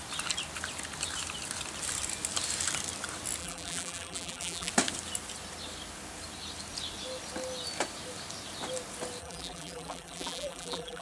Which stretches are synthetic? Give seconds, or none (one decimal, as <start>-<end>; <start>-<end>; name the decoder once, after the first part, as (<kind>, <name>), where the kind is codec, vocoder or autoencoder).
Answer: 3.4-4.7 (vocoder, BigVGAN v2); 9.2-11.0